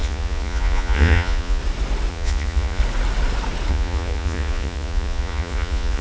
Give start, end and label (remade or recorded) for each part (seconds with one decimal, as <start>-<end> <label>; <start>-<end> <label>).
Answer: 0.0-1.6 remade; 1.6-2.1 recorded; 2.1-2.8 remade; 2.8-3.7 recorded; 3.7-6.0 remade